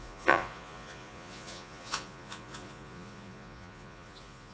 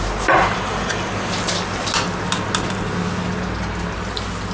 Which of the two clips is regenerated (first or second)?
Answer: first